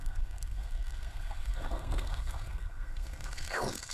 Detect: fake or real fake